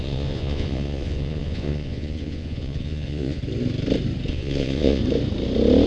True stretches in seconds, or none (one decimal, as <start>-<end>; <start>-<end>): 3.4-4.3; 5.0-5.9